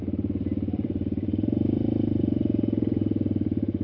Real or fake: fake